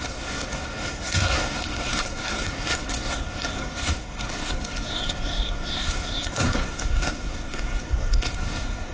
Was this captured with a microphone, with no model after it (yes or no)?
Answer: no